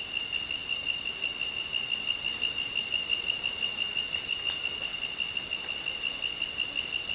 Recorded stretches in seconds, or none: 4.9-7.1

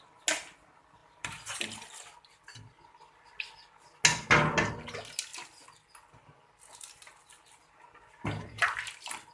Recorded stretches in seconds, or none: 0.0-1.0; 3.2-9.3

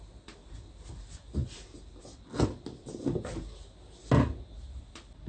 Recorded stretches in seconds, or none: 0.0-5.3